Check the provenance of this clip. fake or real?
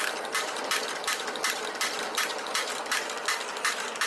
real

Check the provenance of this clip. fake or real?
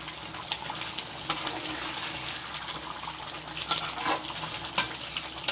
real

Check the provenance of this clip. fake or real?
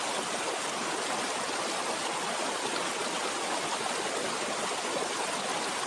real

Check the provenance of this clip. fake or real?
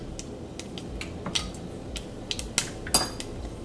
real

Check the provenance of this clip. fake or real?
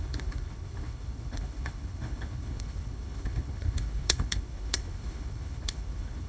fake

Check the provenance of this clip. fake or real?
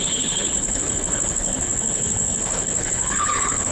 fake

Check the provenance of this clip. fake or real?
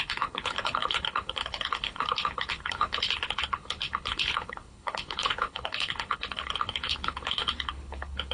fake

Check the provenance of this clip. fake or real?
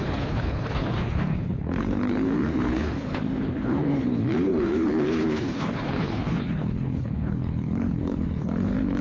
fake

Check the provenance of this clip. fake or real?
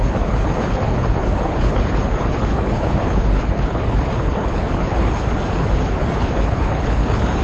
fake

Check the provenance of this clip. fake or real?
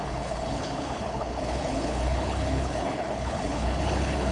fake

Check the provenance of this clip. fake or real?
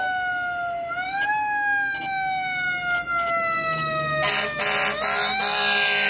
real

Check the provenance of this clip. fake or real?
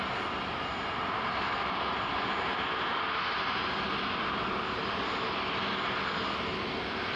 real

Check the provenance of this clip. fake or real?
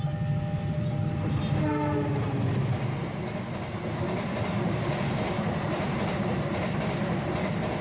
real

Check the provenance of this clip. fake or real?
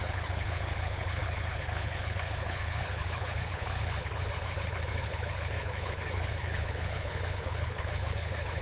fake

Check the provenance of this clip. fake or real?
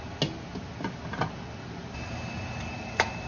real